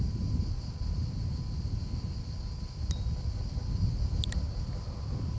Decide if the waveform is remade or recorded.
recorded